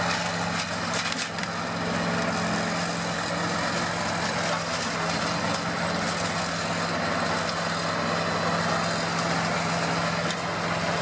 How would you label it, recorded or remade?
recorded